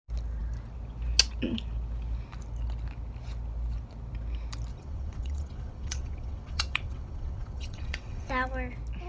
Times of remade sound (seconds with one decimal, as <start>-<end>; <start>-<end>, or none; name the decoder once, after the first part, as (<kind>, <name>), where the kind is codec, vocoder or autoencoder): 4.7-8.3 (vocoder, WaveNeXt)

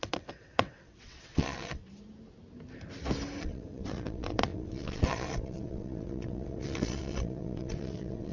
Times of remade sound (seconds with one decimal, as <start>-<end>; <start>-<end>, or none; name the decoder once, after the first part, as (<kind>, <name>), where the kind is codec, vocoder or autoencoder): 0.0-1.8 (vocoder, WaveNeXt); 3.4-8.3

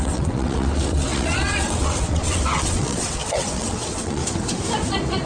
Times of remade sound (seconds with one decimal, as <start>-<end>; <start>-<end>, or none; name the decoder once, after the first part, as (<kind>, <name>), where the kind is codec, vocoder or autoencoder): 0.0-4.2 (vocoder, WaveNeXt)

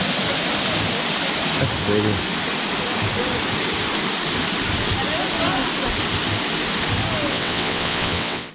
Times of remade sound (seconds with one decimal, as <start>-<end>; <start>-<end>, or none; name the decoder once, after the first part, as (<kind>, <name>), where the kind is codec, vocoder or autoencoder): 7.3-8.5 (vocoder, WaveNeXt)

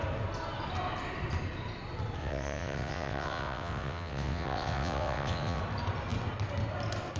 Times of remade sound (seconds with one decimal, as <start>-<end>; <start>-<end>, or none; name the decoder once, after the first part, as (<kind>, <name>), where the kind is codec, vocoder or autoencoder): 2.2-5.6 (vocoder, WaveNeXt)

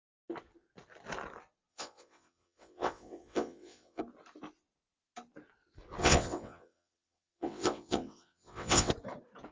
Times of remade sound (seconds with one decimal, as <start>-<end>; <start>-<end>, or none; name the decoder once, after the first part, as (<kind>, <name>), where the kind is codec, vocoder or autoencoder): 1.7-4.0 (vocoder, WaveNeXt); 6.0-8.9

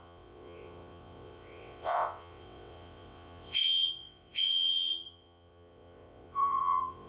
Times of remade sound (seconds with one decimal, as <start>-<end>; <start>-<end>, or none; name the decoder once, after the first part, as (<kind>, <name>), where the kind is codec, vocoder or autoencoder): 0.0-7.1 (vocoder, WaveNeXt)

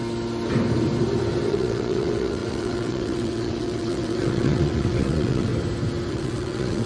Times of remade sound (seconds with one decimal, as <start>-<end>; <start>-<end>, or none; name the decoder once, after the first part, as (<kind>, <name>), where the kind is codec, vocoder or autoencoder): 1.5-5.5 (vocoder, WaveNeXt); 6.1-6.9